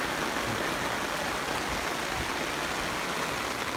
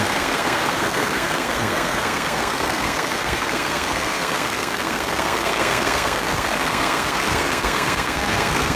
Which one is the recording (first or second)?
first